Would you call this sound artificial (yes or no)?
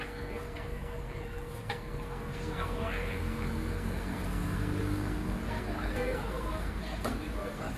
yes